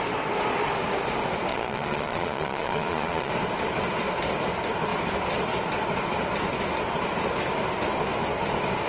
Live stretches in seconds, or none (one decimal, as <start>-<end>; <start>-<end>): 0.0-1.5; 3.3-8.9